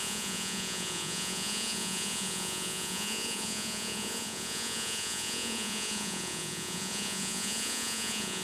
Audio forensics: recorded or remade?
remade